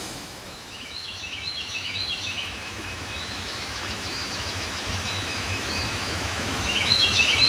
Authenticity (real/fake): fake